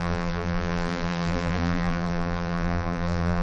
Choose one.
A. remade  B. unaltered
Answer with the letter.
A